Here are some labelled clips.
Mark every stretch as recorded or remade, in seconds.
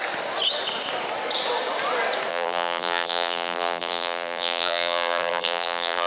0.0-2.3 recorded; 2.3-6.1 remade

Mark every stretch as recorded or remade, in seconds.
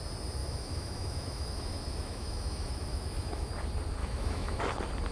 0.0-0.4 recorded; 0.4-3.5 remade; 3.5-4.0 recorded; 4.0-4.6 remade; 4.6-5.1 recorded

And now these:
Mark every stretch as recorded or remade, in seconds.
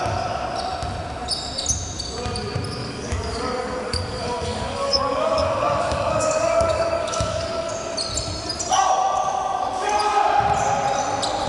0.0-2.8 recorded; 2.8-7.7 remade; 7.7-11.5 recorded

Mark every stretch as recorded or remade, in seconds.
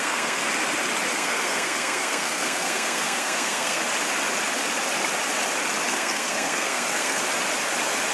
0.0-0.4 remade; 0.4-1.1 recorded; 1.1-3.8 remade; 3.8-5.9 recorded; 5.9-7.2 remade; 7.2-8.1 recorded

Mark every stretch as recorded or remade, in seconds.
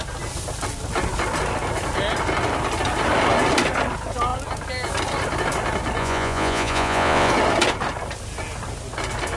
0.0-6.0 recorded; 6.0-7.3 remade; 7.3-9.4 recorded